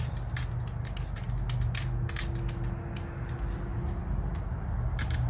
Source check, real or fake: real